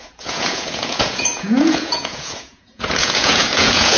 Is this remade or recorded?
remade